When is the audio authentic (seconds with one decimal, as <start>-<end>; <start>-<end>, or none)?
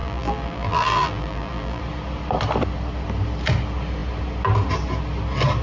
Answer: 1.8-5.6